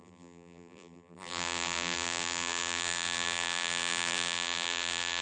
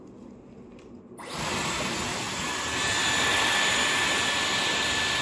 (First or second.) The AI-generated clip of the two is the first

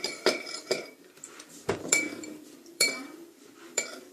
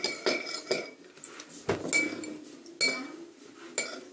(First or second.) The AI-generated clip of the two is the first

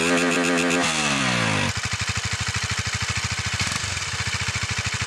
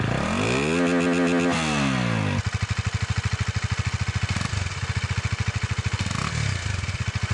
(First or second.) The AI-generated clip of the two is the first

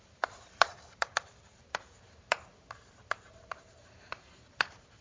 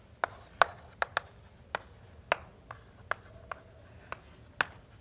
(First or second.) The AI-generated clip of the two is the first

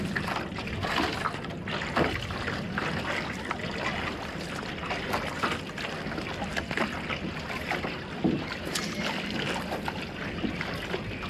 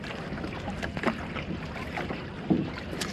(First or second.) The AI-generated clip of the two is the second